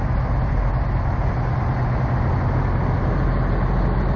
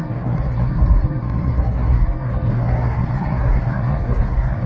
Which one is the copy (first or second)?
second